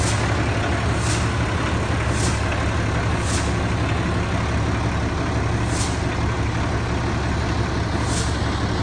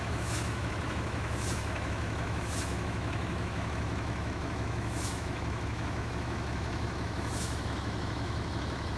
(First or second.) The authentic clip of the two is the first